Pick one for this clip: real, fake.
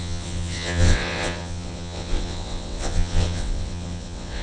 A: fake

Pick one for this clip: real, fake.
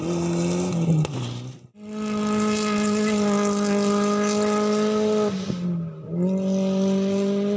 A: real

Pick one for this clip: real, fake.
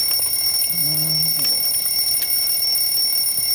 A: real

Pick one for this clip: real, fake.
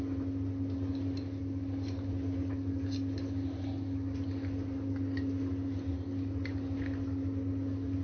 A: real